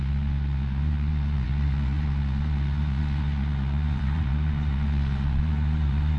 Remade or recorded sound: remade